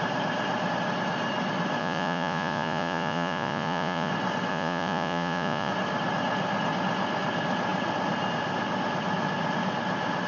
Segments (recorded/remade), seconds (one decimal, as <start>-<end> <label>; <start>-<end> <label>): 0.0-1.8 recorded; 1.8-4.1 remade; 4.1-4.5 recorded; 4.5-5.7 remade; 5.7-10.3 recorded